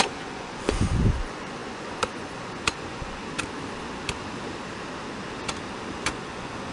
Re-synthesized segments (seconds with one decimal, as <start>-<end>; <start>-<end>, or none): 0.0-3.2; 5.9-6.7